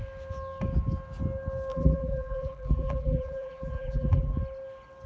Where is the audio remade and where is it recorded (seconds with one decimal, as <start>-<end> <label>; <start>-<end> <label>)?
0.0-1.7 recorded; 1.7-4.4 remade; 4.4-5.1 recorded

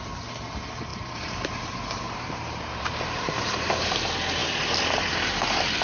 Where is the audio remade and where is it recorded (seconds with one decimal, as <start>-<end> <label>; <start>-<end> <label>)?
0.0-0.9 recorded; 0.9-3.7 remade; 3.7-5.8 recorded